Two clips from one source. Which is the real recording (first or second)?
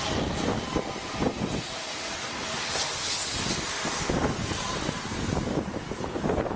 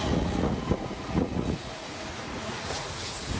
first